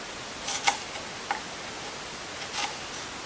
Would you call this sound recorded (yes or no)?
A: yes